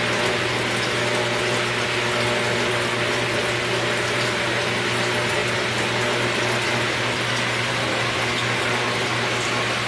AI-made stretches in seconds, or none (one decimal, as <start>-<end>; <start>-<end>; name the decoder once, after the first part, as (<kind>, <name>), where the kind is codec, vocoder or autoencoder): none